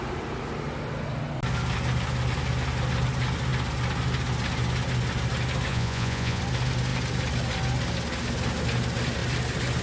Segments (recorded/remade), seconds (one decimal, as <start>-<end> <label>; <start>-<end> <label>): 0.0-5.7 recorded; 5.7-6.4 remade; 6.4-9.8 recorded